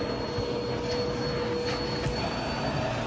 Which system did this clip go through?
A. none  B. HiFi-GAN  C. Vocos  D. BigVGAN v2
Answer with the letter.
A